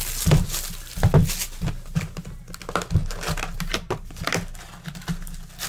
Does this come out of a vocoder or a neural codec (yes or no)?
no